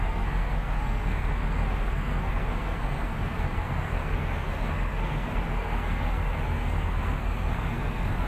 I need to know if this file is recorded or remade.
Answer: remade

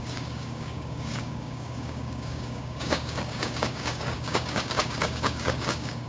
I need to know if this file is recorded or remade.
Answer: remade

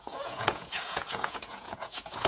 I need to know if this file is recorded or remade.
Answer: remade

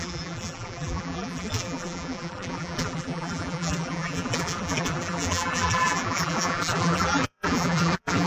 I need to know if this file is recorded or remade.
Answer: remade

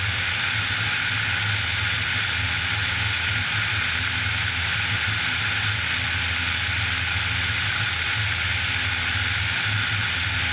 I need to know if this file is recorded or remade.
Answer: recorded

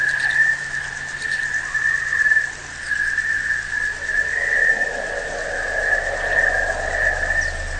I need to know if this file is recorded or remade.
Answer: recorded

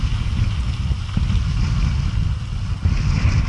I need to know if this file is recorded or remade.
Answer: recorded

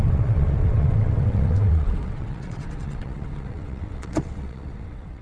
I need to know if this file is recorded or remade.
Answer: remade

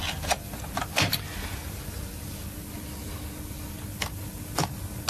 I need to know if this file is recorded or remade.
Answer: recorded